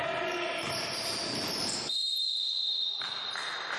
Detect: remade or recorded recorded